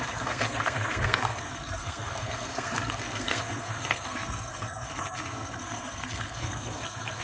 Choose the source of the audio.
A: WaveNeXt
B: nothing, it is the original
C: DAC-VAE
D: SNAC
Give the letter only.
D